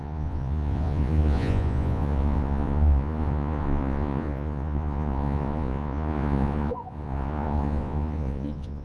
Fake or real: fake